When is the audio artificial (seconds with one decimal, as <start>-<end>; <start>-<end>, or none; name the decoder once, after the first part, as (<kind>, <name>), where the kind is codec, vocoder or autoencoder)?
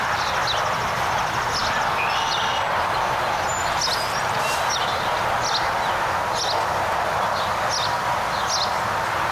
none